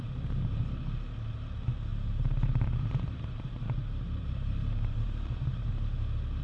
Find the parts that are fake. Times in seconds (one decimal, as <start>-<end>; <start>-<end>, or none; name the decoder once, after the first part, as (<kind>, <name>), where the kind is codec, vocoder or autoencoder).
1.9-5.7 (vocoder, BigVGAN v2)